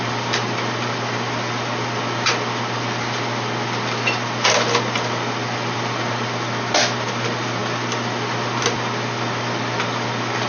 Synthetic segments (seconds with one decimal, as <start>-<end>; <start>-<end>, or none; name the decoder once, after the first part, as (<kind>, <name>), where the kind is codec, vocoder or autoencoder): none